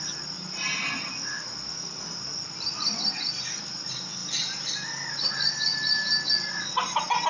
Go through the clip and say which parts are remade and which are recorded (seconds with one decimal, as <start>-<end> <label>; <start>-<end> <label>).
0.0-7.3 recorded